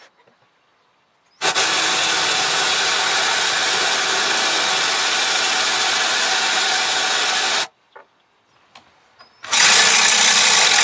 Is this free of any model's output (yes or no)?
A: yes